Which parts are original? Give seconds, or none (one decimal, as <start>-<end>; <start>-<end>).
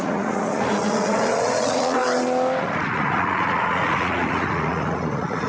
2.0-2.6